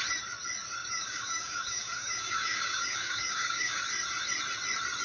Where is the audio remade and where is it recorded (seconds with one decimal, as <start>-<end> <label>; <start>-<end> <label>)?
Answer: 0.0-0.8 recorded; 0.8-3.8 remade; 3.8-5.0 recorded